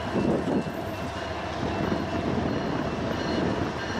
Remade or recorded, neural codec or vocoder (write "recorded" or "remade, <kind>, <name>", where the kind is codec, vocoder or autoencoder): recorded